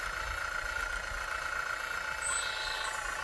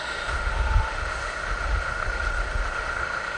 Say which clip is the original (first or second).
first